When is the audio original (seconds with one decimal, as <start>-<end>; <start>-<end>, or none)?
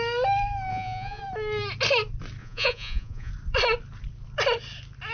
0.0-0.7; 1.2-2.4; 3.3-5.1